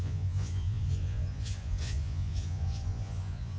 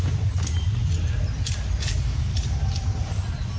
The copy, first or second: first